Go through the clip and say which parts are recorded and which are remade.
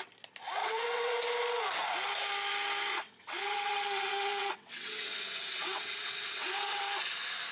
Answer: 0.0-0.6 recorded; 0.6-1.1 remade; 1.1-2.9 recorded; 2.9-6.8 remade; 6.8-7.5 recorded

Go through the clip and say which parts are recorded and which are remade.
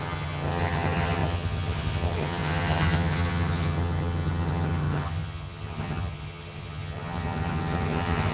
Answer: 0.0-8.3 remade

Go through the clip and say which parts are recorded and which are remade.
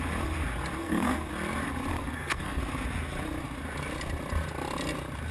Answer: 0.0-0.8 recorded; 0.8-1.3 remade; 1.3-1.9 recorded; 1.9-2.6 remade; 2.6-5.3 recorded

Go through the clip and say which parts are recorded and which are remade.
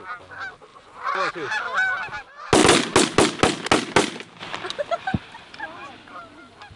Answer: 0.0-0.7 recorded; 0.7-1.3 remade; 1.3-6.8 recorded